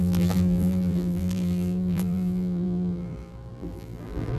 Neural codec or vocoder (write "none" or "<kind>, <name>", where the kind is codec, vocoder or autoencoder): vocoder, BigVGAN v2